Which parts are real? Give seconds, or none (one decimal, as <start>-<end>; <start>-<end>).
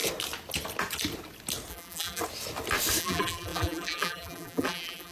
0.0-1.7; 2.2-3.0